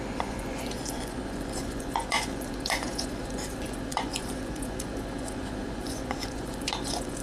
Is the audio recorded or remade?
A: remade